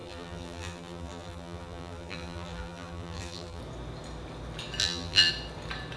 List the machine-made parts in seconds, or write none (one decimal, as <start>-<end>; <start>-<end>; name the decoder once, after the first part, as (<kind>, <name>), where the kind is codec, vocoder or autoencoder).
0.0-3.6 (vocoder, BigVGAN v2); 4.8-5.3